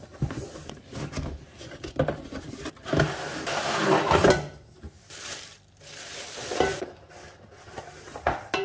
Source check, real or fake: real